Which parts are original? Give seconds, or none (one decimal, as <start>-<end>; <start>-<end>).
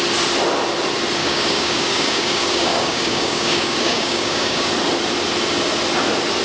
0.0-1.2; 4.7-6.4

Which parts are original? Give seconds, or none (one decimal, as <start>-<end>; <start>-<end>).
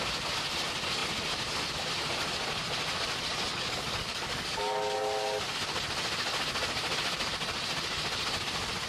0.0-3.5; 5.6-8.9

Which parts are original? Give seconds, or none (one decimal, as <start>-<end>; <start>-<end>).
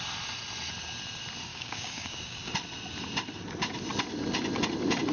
0.0-1.5; 2.5-5.1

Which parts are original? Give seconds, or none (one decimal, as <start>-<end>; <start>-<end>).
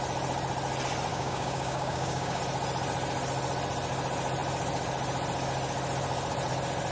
0.0-1.1; 2.4-6.9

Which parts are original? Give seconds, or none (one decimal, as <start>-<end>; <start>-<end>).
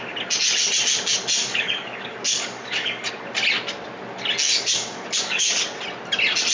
0.0-1.4; 3.1-4.5; 5.6-6.5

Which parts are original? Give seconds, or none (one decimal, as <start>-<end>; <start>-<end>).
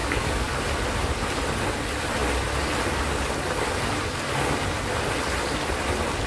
0.6-6.3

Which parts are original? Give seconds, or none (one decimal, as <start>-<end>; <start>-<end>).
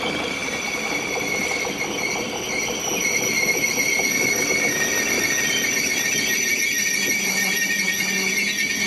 0.0-8.9